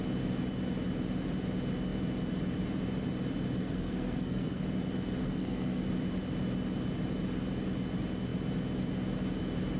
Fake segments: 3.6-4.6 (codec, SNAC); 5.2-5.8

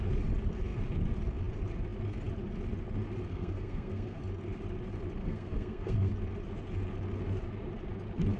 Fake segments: 3.3-4.2 (codec, SNAC); 5.2-6.1

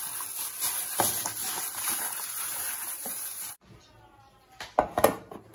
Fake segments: 1.4-3.5 (vocoder, BigVGAN v2)

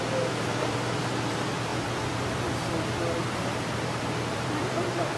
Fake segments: 0.0-1.7 (vocoder, BigVGAN v2); 3.5-5.2

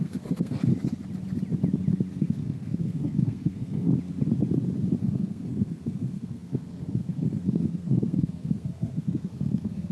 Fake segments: 0.0-0.7 (codec, SNAC); 2.1-3.9; 5.0-9.9

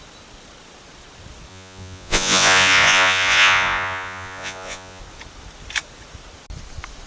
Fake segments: 1.5-5.0 (vocoder, Vocos)

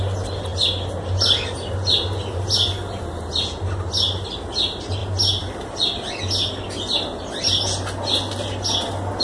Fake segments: none